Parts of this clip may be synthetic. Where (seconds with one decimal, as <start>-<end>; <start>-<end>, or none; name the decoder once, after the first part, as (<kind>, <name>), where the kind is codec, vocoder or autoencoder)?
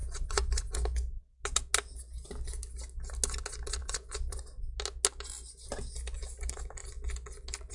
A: 0.0-1.4 (vocoder, Vocos); 3.8-4.7